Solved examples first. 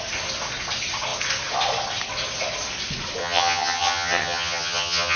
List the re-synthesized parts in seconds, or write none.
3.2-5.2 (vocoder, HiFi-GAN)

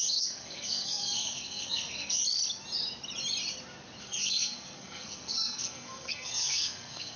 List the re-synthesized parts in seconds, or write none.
0.0-2.2 (codec, SNAC); 4.0-7.2

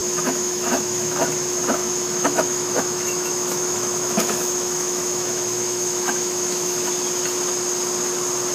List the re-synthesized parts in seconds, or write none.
0.0-1.2 (autoencoder, DAC-VAE); 1.8-6.9

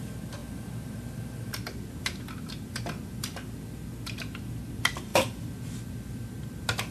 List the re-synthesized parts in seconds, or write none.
none